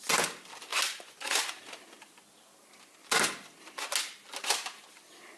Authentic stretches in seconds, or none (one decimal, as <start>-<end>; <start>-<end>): 0.0-0.7; 1.5-5.4